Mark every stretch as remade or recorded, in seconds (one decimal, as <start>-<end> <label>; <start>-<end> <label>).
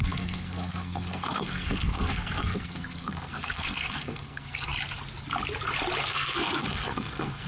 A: 0.0-4.7 remade; 4.7-6.0 recorded; 6.0-7.5 remade